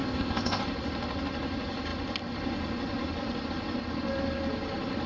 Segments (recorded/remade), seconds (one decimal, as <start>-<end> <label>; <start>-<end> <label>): 0.0-0.6 remade; 0.6-5.1 recorded